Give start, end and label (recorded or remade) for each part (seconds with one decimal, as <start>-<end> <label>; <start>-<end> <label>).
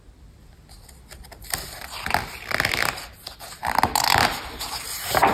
0.0-5.3 recorded